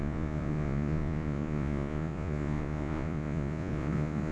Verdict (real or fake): fake